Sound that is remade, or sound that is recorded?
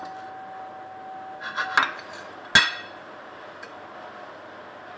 recorded